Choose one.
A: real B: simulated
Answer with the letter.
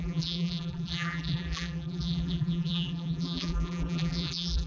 B